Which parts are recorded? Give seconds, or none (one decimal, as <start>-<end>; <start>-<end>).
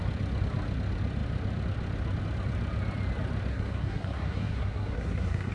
0.0-3.5